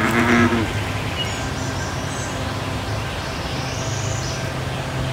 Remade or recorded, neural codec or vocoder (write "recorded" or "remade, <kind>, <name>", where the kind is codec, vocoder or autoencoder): recorded